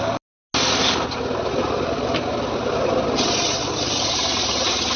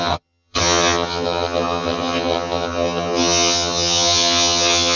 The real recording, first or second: first